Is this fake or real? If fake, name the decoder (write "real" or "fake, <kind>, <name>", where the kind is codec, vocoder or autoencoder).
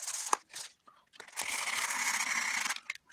real